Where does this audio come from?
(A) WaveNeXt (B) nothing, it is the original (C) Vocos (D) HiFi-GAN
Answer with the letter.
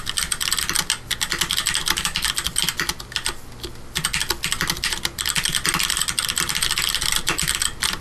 B